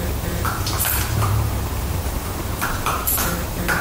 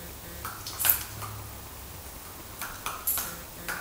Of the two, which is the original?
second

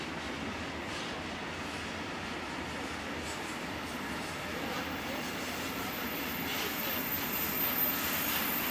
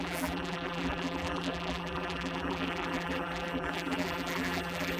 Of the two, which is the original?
first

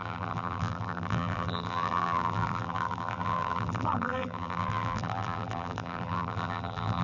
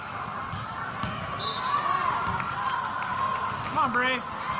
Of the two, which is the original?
second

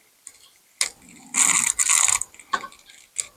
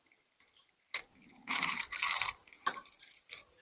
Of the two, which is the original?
first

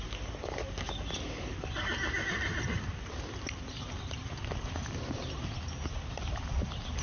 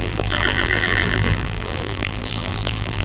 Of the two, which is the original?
first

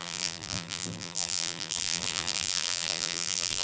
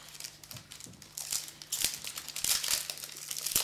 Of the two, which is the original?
second